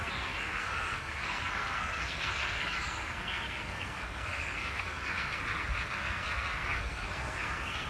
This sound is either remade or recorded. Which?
remade